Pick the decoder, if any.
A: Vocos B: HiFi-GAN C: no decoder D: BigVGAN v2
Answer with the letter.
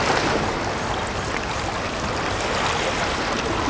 C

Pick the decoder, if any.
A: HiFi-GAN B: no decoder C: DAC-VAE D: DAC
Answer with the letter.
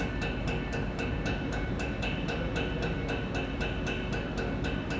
B